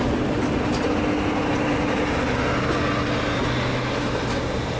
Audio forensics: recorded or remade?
recorded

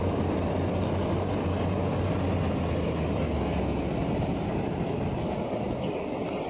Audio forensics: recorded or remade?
recorded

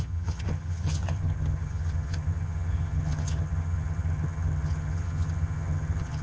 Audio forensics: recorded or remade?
remade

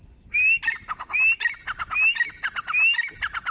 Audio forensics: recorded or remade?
recorded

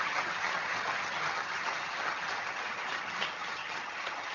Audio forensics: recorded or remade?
remade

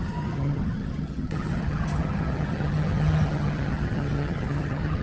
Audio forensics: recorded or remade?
remade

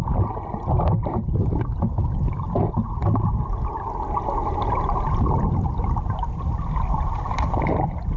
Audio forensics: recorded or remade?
recorded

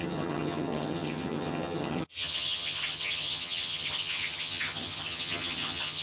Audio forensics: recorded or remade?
remade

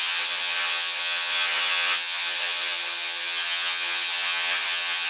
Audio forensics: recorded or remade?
remade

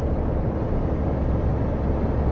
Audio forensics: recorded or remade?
recorded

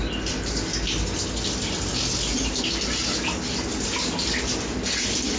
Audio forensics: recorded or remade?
recorded